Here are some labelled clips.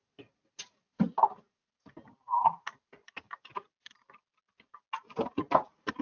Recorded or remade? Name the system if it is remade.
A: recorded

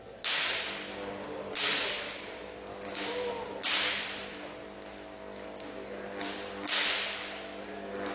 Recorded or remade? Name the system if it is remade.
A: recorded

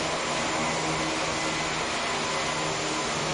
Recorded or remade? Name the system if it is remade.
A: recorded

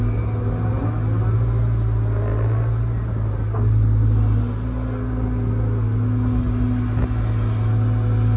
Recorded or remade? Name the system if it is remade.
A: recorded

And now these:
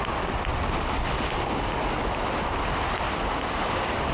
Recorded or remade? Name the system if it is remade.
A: recorded